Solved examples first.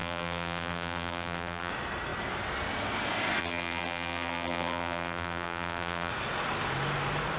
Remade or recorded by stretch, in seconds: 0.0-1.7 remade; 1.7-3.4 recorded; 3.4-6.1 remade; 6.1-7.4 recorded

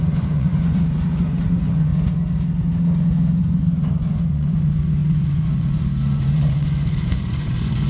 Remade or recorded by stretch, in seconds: 0.0-1.9 remade; 1.9-3.4 recorded; 3.4-7.9 remade

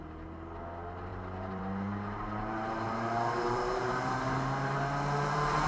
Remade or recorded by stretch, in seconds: 0.0-1.1 recorded; 1.1-4.1 remade; 4.1-5.7 recorded

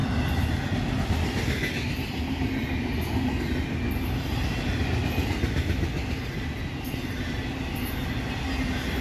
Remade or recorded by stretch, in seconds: 0.0-9.0 recorded

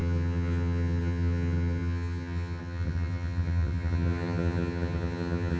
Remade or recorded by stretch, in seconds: 0.0-5.6 remade

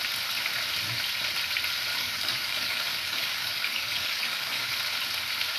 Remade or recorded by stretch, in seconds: 0.0-1.9 recorded; 1.9-4.7 remade; 4.7-5.6 recorded

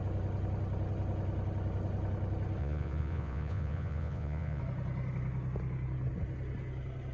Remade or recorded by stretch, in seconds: 0.0-2.6 recorded; 2.6-4.6 remade; 4.6-7.1 recorded